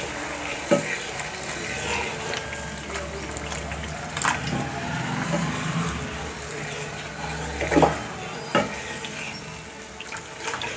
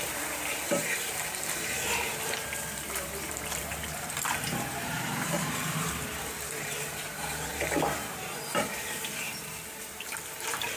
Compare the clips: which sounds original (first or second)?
first